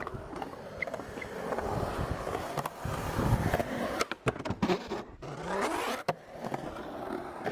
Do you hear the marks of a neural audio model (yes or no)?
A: no